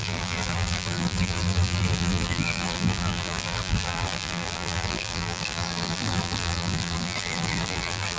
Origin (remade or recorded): remade